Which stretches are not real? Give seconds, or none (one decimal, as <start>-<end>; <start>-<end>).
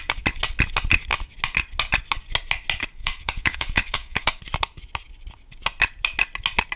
3.0-4.4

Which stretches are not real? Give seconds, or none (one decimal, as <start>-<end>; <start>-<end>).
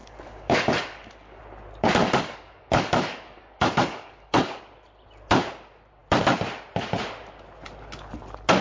0.0-1.4; 2.0-4.6